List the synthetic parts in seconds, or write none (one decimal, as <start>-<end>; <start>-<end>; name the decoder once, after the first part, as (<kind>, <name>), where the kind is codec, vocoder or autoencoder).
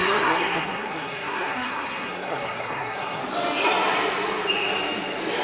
0.0-3.2 (codec, SNAC)